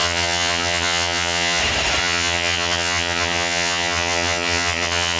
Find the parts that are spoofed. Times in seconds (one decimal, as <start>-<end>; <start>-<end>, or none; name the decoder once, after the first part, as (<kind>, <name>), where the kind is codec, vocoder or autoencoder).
0.0-1.6 (vocoder, HiFi-GAN); 2.0-5.2